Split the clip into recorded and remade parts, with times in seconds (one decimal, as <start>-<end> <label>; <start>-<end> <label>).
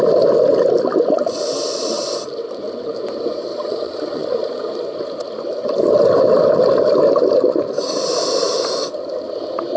0.0-3.5 recorded; 3.5-4.6 remade; 4.6-9.8 recorded